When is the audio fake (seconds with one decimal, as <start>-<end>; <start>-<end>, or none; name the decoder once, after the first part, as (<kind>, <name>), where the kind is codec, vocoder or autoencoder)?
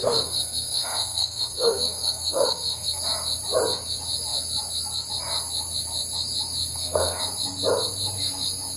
0.0-3.0 (codec, SNAC); 6.7-7.2